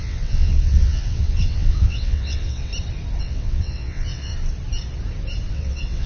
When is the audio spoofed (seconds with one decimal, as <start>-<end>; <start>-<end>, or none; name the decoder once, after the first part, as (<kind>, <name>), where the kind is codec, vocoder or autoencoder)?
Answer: 0.0-2.7 (vocoder, WaveNeXt); 3.2-4.3; 5.5-6.1